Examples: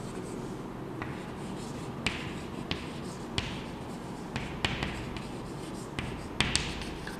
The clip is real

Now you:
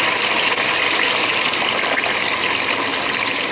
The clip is real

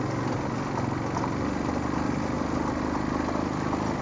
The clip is real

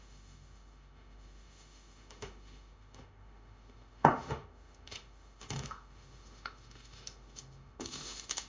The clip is fake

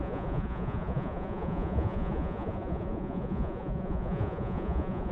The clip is fake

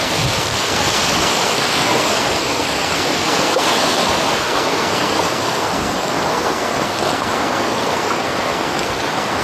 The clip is fake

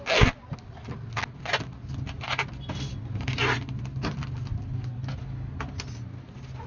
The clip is real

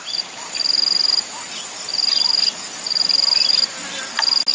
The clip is real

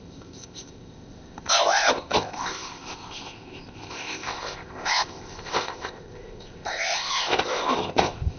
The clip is fake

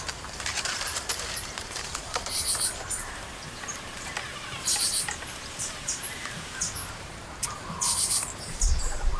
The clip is fake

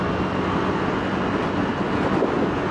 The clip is real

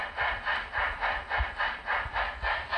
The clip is fake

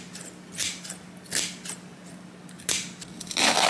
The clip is real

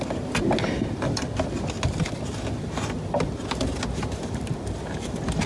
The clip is real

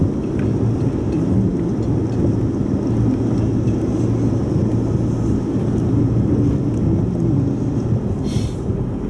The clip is real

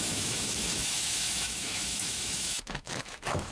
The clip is fake